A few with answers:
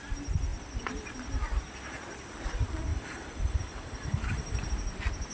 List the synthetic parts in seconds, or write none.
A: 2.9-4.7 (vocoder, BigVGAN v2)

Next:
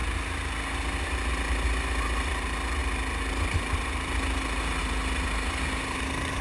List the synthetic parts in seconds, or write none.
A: none

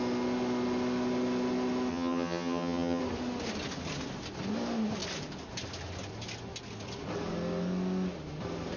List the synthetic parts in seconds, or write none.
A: 1.9-3.0 (vocoder, HiFi-GAN)

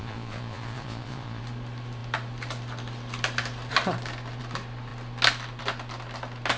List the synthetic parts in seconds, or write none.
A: 0.0-1.4 (vocoder, Vocos)

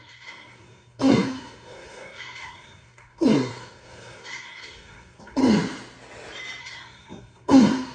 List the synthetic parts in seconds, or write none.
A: 0.0-5.4 (codec, SNAC); 6.6-7.9

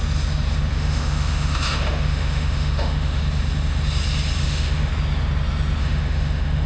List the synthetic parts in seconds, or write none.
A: 0.7-3.2 (autoencoder, DAC-VAE); 4.4-4.9; 5.8-6.7